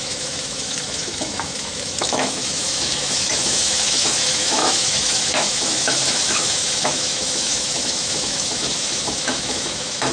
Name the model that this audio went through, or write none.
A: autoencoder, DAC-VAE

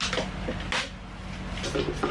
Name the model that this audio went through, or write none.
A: none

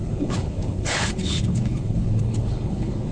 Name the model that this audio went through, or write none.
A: codec, HILCodec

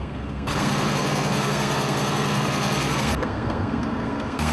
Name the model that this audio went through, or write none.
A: codec, SNAC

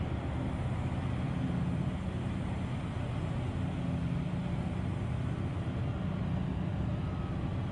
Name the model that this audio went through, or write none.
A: none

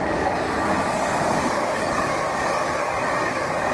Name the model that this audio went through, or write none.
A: codec, DAC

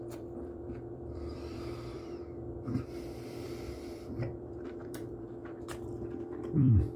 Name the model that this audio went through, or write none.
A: vocoder, BigVGAN v2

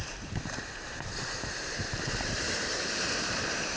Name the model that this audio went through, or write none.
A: vocoder, BigVGAN v2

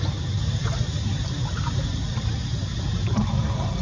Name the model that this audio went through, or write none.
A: vocoder, BigVGAN v2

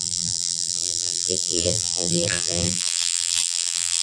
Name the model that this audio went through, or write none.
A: vocoder, BigVGAN v2